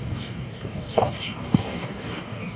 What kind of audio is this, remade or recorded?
remade